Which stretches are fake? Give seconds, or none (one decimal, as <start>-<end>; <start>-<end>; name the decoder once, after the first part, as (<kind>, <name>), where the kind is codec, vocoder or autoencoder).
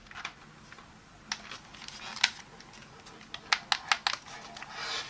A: none